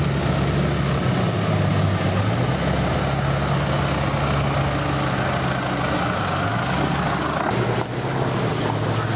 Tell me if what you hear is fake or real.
real